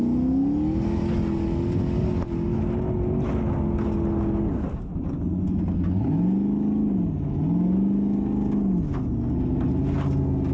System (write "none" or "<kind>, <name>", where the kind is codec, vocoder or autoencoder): none